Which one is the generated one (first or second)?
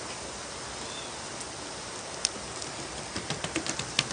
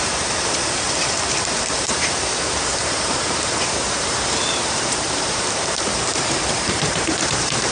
second